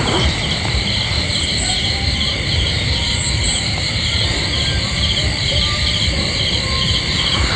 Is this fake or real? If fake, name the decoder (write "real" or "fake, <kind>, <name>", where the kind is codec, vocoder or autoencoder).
fake, vocoder, BigVGAN v2